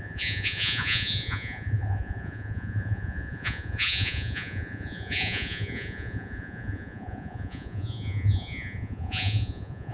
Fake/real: fake